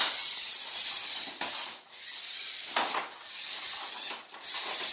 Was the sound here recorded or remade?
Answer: recorded